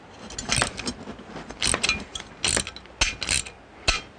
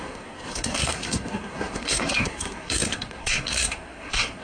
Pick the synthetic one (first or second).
second